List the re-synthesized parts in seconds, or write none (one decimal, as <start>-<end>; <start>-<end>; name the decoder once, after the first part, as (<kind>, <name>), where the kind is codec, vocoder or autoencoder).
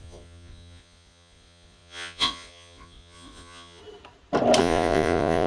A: 0.0-3.8 (vocoder, Vocos); 4.6-5.5